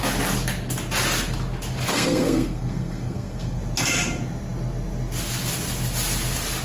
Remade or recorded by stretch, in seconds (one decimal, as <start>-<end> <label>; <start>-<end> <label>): 0.0-1.9 recorded; 1.9-3.6 remade; 3.6-6.6 recorded